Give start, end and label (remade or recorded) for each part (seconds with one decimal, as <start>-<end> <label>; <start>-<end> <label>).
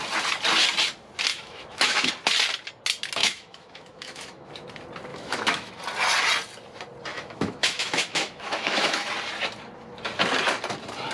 0.0-1.3 recorded; 1.3-2.1 remade; 2.1-3.2 recorded; 3.2-4.5 remade; 4.5-5.1 recorded; 5.1-5.7 remade; 5.7-7.1 recorded; 7.1-9.1 remade; 9.1-11.1 recorded